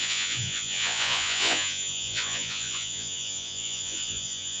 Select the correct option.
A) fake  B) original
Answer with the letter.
A